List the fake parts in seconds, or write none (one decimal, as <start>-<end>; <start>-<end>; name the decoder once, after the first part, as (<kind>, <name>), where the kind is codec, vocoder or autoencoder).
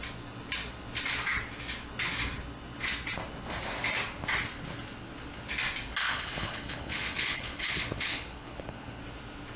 6.0-9.0 (codec, HILCodec)